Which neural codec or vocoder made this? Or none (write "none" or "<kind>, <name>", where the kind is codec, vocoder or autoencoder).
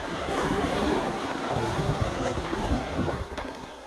codec, SNAC